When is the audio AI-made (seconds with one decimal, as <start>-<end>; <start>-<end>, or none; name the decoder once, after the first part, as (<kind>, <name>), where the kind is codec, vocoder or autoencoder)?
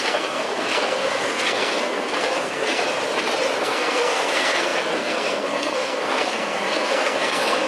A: 0.0-2.8 (codec, SNAC); 3.6-7.7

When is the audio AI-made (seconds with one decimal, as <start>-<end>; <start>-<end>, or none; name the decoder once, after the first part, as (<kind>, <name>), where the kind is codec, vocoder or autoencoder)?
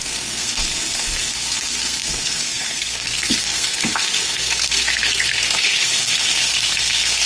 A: 0.0-7.3 (codec, SNAC)